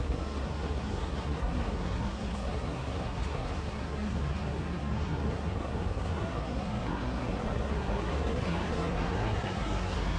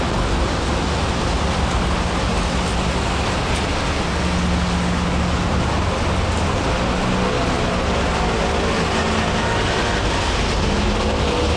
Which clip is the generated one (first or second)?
first